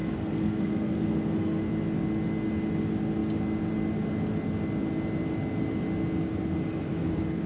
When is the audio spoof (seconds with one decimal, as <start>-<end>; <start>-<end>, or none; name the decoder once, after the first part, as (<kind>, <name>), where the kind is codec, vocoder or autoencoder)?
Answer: 0.0-1.6 (codec, SNAC)